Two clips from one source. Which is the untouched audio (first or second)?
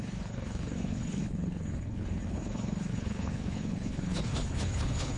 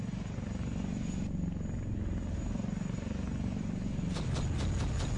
second